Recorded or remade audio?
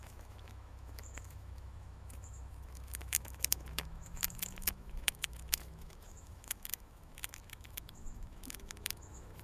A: remade